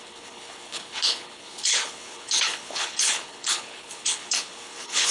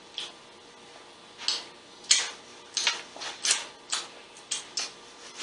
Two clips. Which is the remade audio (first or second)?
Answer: first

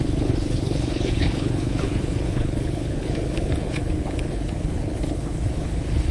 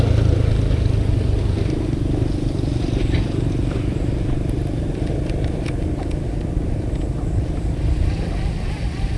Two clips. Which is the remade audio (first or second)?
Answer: first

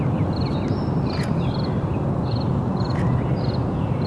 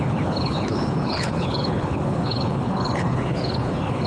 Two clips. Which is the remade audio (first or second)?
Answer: second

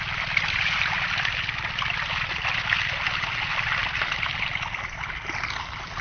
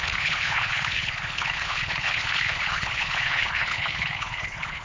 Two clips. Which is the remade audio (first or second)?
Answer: second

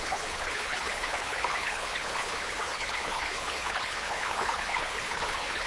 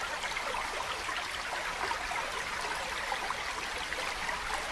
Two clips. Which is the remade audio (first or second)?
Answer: first